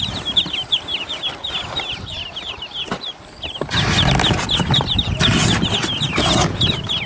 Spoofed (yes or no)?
no